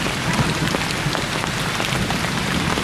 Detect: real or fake real